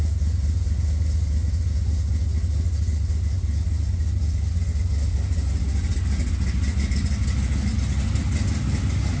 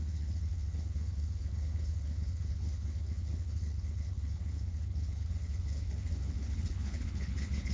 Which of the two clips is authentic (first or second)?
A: first